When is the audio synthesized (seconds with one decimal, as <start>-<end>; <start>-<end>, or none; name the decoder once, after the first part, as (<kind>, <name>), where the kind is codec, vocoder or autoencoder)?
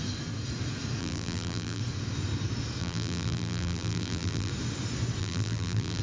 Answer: 1.0-1.8 (vocoder, BigVGAN v2); 2.8-4.5; 5.2-6.0